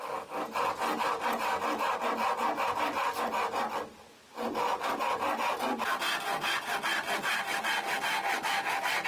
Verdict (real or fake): real